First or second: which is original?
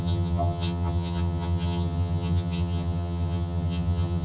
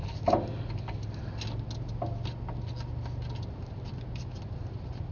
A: second